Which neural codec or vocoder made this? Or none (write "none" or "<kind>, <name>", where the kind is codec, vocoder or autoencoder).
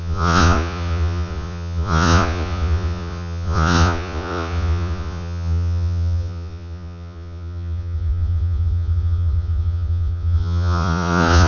vocoder, Vocos